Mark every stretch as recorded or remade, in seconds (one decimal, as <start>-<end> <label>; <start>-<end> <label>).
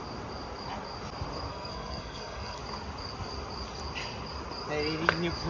0.0-1.5 recorded; 1.5-2.6 remade; 2.6-5.5 recorded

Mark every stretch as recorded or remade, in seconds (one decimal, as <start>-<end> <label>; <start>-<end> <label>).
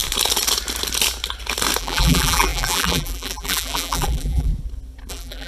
0.0-1.8 recorded; 1.8-4.5 remade; 4.5-5.1 recorded; 5.1-5.5 remade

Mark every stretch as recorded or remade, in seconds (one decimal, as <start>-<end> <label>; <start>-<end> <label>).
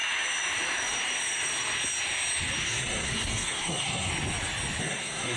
0.0-2.6 recorded; 2.6-4.1 remade; 4.1-4.8 recorded; 4.8-5.4 remade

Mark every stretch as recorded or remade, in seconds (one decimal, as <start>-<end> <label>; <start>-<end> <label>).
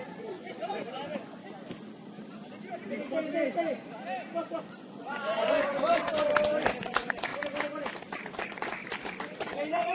0.0-1.4 remade; 1.4-4.6 recorded; 4.6-5.7 remade; 5.7-6.8 recorded; 6.8-7.3 remade; 7.3-8.4 recorded; 8.4-8.8 remade; 8.8-9.4 recorded; 9.4-9.9 remade